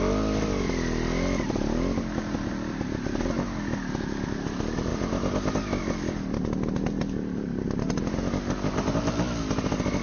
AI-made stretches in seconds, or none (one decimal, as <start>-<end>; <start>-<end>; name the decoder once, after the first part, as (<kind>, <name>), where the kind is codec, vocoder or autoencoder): none